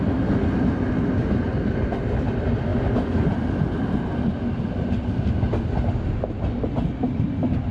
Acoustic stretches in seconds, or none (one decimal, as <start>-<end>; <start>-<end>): 0.0-7.7